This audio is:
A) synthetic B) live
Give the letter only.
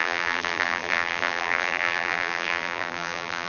A